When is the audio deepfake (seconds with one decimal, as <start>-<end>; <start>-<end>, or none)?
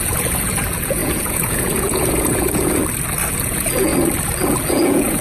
0.0-2.8; 3.3-3.9; 4.6-5.2